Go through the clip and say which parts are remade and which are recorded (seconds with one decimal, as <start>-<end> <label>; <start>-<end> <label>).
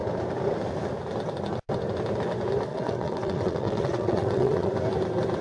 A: 0.0-2.7 recorded; 2.7-4.7 remade; 4.7-5.4 recorded